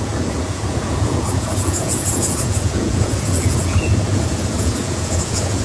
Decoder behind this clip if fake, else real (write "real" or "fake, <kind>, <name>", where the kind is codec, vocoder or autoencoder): fake, vocoder, Vocos